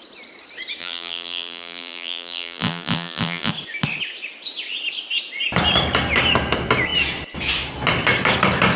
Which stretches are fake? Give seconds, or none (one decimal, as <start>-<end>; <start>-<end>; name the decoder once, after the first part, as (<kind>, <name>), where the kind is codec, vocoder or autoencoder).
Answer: 0.8-3.5 (vocoder, BigVGAN v2)